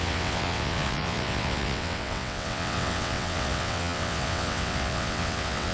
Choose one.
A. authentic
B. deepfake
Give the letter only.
B